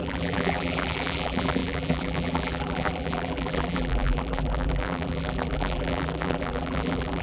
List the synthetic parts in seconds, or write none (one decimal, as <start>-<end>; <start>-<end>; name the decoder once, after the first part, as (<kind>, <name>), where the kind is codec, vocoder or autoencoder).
0.0-7.2 (vocoder, BigVGAN v2)